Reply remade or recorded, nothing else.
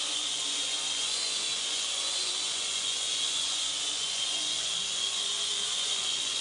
remade